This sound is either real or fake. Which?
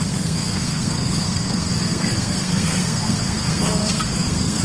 fake